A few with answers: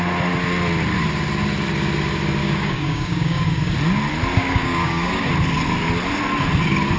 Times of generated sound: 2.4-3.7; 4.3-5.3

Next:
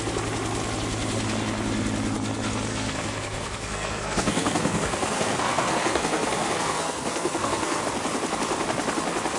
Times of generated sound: 2.7-7.8

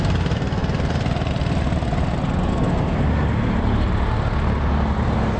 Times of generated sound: 2.5-3.0

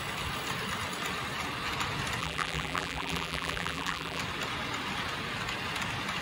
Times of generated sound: 2.2-4.2

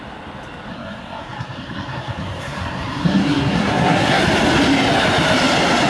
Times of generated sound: 0.7-4.2

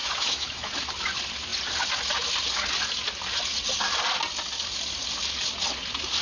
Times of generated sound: 0.0-0.7

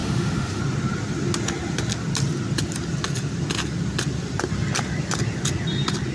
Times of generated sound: 0.0-0.6

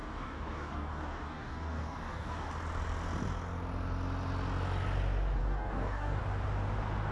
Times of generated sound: 0.0-2.5; 5.4-6.2